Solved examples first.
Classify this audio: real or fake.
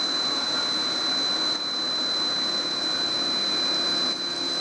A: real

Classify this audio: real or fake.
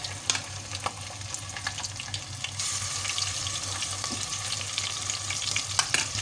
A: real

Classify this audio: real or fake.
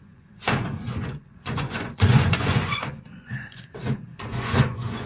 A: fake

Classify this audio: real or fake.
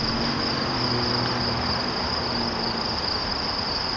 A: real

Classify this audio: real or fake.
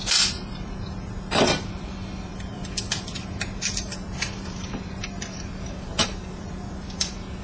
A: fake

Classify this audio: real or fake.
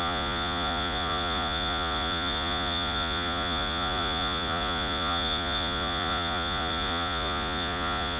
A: fake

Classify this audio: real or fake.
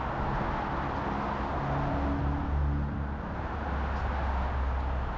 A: real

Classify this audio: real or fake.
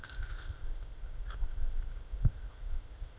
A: fake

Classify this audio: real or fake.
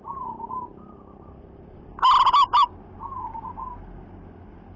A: real